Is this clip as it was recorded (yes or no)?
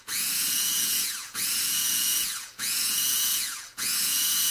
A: no